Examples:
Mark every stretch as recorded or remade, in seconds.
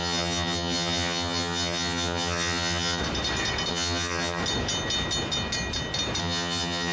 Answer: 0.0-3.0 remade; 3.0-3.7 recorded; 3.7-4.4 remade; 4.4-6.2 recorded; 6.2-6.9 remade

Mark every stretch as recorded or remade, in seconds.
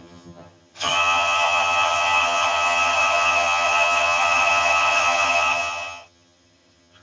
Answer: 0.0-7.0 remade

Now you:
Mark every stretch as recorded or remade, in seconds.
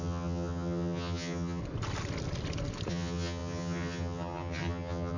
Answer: 0.0-1.6 remade; 1.6-2.9 recorded; 2.9-5.2 remade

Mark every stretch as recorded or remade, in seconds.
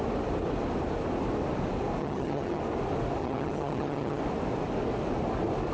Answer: 0.0-2.0 recorded; 2.0-2.6 remade; 2.6-3.2 recorded; 3.2-4.2 remade; 4.2-5.7 recorded